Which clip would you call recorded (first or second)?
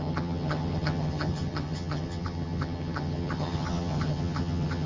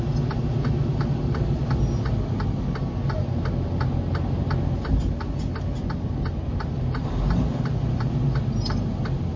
second